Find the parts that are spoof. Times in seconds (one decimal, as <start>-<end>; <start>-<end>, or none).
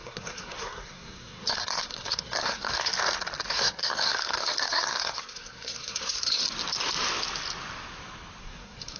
0.0-2.9; 3.5-6.4; 8.4-9.0